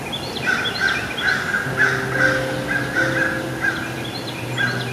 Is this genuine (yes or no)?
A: yes